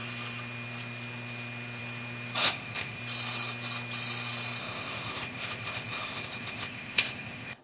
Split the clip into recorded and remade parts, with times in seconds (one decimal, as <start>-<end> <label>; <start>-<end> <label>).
0.0-2.4 recorded; 2.4-3.0 remade; 3.0-4.6 recorded; 4.6-7.6 remade